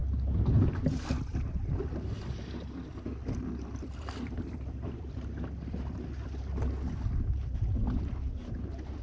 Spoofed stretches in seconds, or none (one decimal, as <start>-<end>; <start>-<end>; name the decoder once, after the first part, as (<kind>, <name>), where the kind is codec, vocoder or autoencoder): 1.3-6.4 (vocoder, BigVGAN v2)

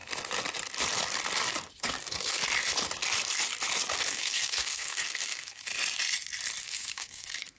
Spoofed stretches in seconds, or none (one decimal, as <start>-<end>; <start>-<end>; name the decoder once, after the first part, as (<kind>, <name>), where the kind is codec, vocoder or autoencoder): 1.8-2.4 (codec, SNAC); 3.9-5.7; 6.6-7.6

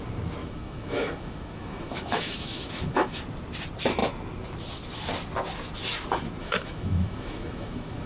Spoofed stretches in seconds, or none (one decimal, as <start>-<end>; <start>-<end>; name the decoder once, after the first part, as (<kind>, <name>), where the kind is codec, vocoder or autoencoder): 0.4-3.2 (autoencoder, DAC-VAE); 6.4-8.1

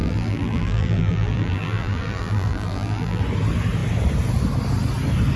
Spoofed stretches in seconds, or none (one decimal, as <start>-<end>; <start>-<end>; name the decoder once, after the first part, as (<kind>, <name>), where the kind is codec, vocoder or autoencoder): 0.0-3.2 (vocoder, BigVGAN v2)

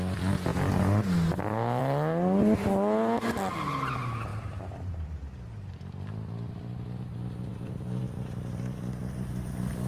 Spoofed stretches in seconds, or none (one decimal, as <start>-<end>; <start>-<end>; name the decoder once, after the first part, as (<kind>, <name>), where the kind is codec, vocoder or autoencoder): 4.3-5.7 (vocoder, BigVGAN v2); 7.5-8.0